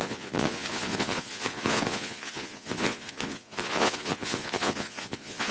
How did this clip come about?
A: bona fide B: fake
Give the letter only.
B